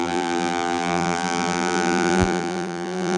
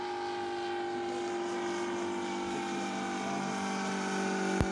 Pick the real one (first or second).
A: second